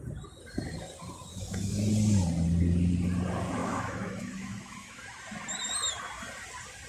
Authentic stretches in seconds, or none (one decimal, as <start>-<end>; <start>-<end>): 0.0-1.3; 1.9-3.6; 5.2-6.9